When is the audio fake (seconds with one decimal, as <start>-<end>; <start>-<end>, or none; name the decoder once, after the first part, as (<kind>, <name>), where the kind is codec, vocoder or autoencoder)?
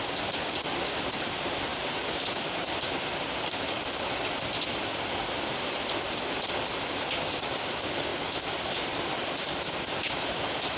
none